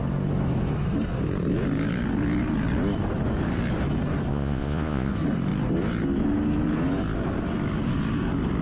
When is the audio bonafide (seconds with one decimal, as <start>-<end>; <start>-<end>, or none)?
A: 0.0-4.3; 5.1-8.6